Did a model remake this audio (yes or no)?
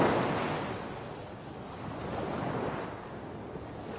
no